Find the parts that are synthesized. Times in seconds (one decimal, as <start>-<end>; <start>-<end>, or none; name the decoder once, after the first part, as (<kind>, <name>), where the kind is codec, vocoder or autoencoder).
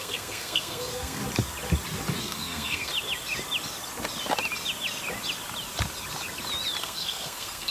0.0-1.2 (codec, SNAC); 2.2-2.9; 6.8-7.7